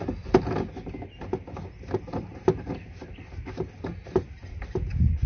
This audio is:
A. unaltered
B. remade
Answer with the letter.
A